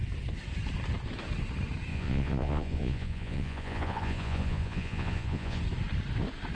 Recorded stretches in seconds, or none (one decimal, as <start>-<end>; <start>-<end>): 0.0-1.9; 5.6-6.5